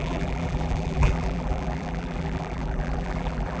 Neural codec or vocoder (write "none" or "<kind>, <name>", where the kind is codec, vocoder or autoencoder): vocoder, BigVGAN v2